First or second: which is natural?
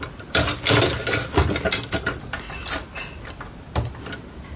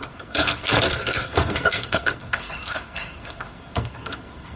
first